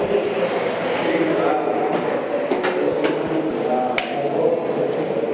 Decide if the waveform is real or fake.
real